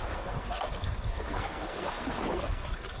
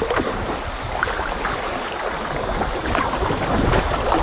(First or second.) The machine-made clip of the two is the first